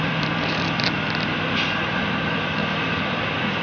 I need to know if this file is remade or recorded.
remade